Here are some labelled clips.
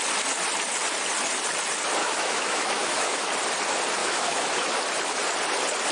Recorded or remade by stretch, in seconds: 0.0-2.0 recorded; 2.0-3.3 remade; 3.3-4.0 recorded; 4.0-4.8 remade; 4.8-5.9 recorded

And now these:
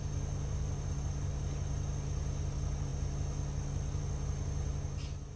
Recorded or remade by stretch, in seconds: 0.0-5.4 recorded

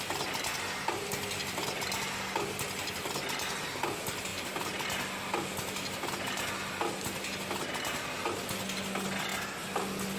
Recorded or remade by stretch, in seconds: 0.0-10.2 recorded

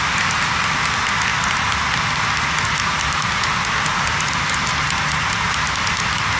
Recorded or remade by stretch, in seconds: 0.0-6.4 recorded

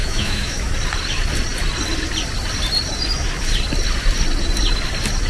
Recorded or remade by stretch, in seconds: 0.0-0.7 remade; 0.7-5.3 recorded

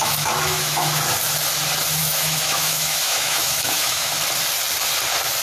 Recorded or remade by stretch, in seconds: 0.0-1.0 remade; 1.0-2.0 recorded; 2.0-4.1 remade; 4.1-5.4 recorded

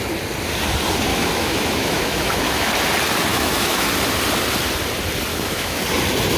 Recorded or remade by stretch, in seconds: 0.0-1.1 recorded; 1.1-2.7 remade; 2.7-3.3 recorded; 3.3-3.9 remade; 3.9-5.3 recorded; 5.3-5.8 remade; 5.8-6.4 recorded

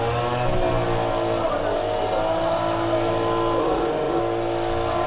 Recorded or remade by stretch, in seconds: 0.0-3.6 recorded; 3.6-4.2 remade; 4.2-5.1 recorded